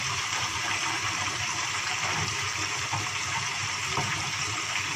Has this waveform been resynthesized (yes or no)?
yes